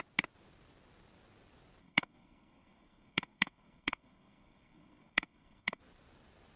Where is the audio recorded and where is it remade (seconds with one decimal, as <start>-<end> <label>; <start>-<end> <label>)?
0.0-1.8 recorded; 1.8-5.8 remade; 5.8-6.6 recorded